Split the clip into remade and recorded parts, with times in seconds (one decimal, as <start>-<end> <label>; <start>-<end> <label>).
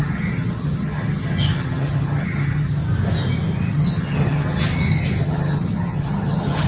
0.0-2.8 remade; 2.8-3.7 recorded; 3.7-4.7 remade; 4.7-5.2 recorded; 5.2-6.7 remade